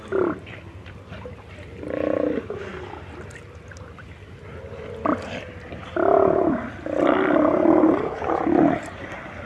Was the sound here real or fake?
real